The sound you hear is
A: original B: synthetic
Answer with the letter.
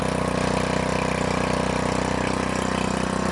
A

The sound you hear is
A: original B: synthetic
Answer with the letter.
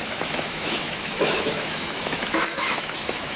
B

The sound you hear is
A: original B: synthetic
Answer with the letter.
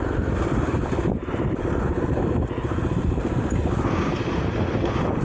B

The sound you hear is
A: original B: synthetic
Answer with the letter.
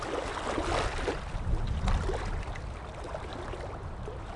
A